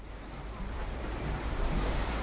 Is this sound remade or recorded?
remade